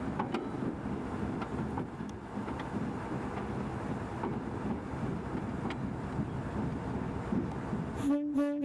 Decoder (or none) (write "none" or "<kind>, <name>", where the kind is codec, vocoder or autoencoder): none